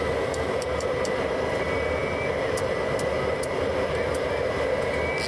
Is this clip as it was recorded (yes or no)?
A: yes